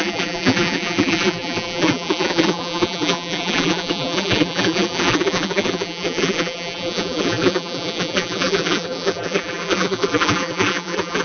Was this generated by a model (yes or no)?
yes